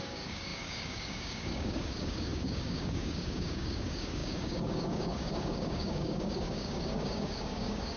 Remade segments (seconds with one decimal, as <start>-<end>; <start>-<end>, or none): 0.0-8.0